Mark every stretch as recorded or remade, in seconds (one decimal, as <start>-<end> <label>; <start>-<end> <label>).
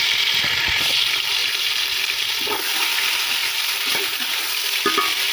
0.0-1.4 recorded; 1.4-2.3 remade; 2.3-3.4 recorded; 3.4-4.5 remade; 4.5-5.3 recorded